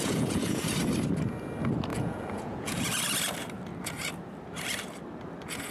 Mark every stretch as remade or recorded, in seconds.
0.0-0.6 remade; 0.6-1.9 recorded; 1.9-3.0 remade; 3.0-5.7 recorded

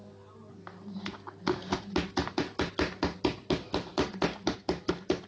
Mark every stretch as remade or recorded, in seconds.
0.0-5.3 recorded

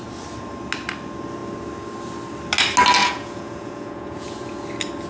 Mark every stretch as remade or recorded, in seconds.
0.0-3.0 recorded; 3.0-4.6 remade; 4.6-5.1 recorded

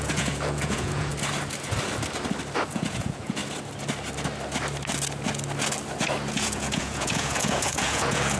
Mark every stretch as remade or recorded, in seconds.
0.0-1.1 remade; 1.1-2.7 recorded; 2.7-3.4 remade; 3.4-6.3 recorded; 6.3-8.4 remade

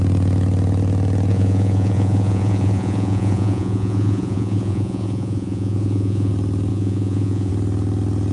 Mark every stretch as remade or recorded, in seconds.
0.0-1.3 recorded; 1.3-6.3 remade; 6.3-6.7 recorded; 6.7-7.5 remade; 7.5-8.3 recorded

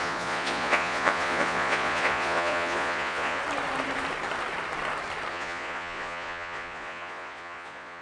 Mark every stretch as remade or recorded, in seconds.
0.0-3.4 remade; 3.4-5.3 recorded; 5.3-8.0 remade